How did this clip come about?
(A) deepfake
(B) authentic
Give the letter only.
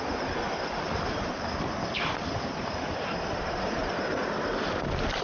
B